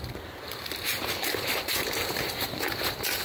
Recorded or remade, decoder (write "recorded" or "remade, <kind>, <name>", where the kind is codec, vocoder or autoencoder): remade, vocoder, BigVGAN v2